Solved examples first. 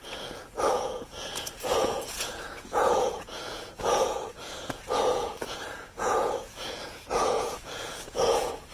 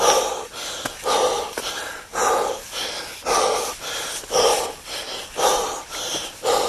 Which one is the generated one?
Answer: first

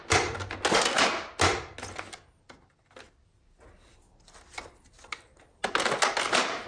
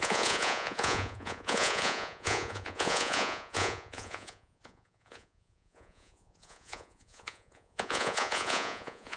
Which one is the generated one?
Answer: second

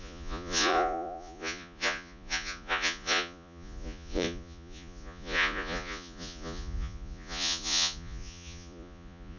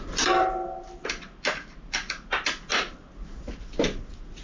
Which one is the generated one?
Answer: first